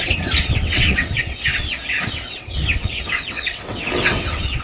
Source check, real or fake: fake